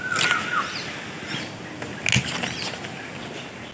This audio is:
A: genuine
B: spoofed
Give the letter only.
A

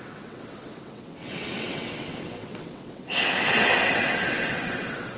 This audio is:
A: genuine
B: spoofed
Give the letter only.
B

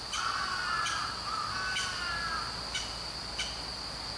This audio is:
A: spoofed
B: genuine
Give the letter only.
B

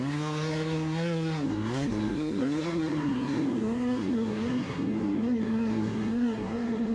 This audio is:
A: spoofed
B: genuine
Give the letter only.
A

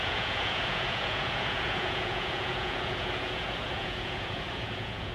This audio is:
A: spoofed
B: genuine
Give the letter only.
A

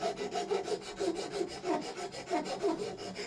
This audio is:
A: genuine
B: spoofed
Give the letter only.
A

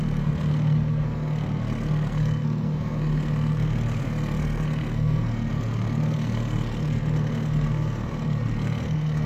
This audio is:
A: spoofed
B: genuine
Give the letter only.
A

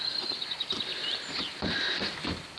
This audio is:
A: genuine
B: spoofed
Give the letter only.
B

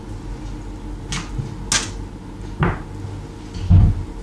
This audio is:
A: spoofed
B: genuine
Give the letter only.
B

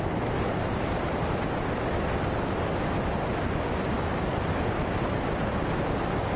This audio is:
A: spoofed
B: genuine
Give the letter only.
B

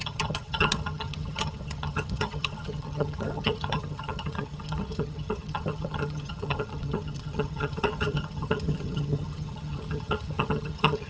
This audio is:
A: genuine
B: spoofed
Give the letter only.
B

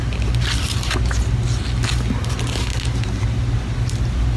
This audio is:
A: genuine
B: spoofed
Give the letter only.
A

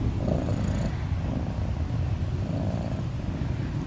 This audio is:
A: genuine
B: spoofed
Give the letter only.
A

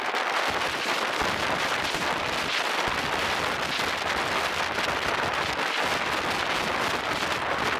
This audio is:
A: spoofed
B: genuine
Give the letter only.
B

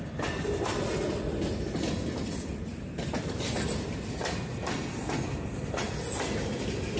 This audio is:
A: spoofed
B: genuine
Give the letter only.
B